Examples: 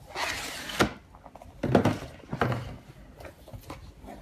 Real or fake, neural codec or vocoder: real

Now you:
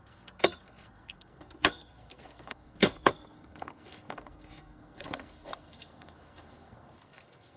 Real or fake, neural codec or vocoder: fake, codec, SNAC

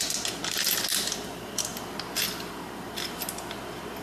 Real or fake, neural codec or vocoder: real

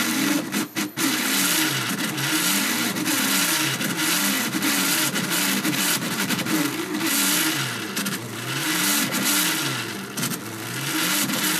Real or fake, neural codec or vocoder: real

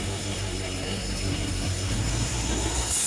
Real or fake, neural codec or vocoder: fake, codec, SNAC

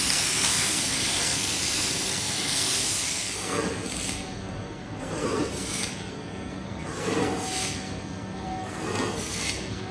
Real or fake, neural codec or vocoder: fake, codec, SNAC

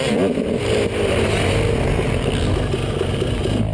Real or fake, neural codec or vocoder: real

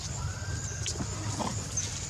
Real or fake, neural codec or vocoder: real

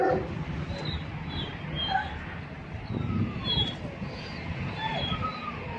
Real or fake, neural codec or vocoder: real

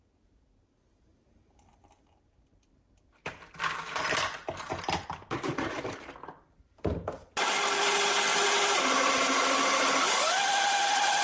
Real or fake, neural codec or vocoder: real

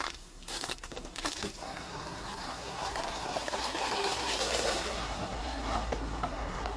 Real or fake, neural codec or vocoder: fake, codec, SNAC